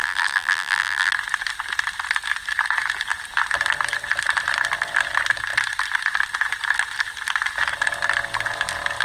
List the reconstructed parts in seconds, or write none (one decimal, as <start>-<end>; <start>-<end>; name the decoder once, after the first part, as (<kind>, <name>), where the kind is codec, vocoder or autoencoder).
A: 0.0-1.1 (vocoder, BigVGAN v2)